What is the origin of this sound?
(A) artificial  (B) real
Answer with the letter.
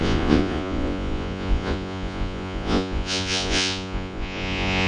A